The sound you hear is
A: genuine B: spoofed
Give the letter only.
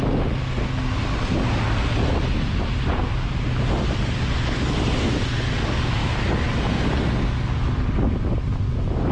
A